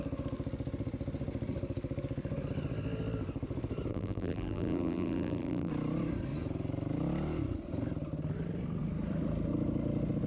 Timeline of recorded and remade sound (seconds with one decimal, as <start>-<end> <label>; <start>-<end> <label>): 0.0-3.9 recorded; 3.9-5.7 remade; 5.7-10.3 recorded